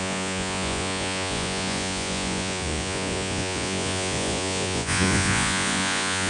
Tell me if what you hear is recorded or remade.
remade